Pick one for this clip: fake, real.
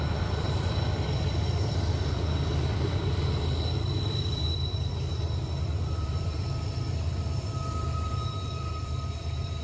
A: fake